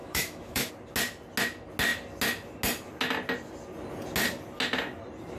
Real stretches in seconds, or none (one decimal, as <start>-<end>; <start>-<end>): 0.7-5.4